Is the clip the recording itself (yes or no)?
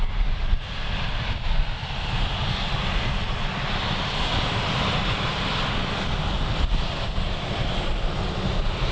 yes